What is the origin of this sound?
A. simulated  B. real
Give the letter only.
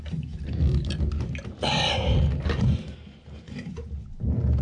B